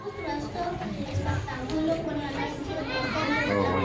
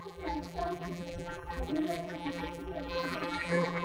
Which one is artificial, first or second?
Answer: second